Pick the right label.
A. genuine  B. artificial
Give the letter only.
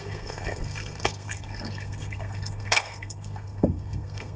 B